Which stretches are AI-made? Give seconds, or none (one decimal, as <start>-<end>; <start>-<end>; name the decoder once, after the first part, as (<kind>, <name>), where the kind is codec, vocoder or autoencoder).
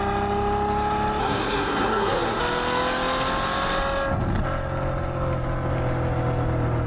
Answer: 1.2-2.4 (codec, SNAC)